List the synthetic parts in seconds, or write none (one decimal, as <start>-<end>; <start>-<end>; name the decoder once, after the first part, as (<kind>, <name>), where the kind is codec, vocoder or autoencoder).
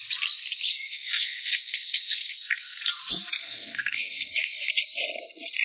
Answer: 0.7-3.0 (codec, SNAC); 3.4-4.7